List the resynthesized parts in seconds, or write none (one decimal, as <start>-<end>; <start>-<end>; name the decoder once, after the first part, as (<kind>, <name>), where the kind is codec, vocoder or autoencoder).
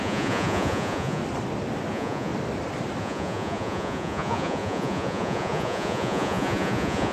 0.0-1.2 (vocoder, Vocos); 1.9-2.3; 3.0-7.1